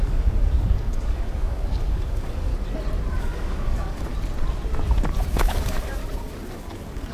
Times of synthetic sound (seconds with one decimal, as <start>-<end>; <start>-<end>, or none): 0.0-2.5; 3.2-4.1; 5.3-6.0; 6.5-7.1